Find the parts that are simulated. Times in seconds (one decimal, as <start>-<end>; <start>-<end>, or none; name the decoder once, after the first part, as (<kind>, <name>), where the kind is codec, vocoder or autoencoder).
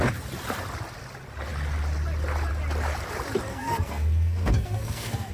3.5-5.3 (codec, SNAC)